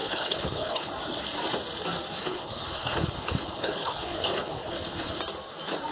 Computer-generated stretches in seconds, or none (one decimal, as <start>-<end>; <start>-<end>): 0.0-0.9; 2.2-5.2